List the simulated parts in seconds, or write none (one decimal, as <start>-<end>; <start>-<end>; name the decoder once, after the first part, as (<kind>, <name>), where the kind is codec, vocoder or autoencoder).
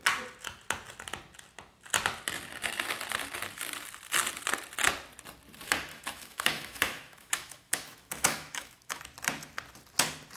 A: 5.9-9.0 (autoencoder, DAC-VAE)